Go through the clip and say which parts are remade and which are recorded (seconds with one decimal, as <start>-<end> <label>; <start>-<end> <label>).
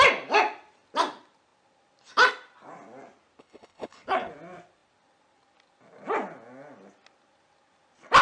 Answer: 0.0-3.4 recorded; 3.4-4.3 remade; 4.3-8.2 recorded